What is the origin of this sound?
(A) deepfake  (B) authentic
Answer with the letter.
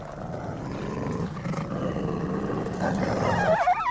B